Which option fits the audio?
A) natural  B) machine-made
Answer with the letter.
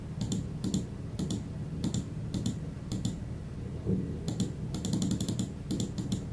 A